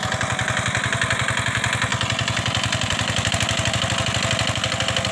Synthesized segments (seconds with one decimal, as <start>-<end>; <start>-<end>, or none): 1.9-3.3